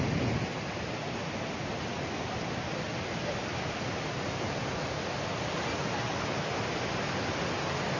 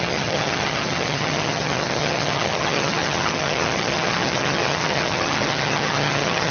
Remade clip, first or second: second